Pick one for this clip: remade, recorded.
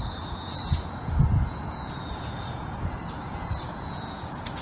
remade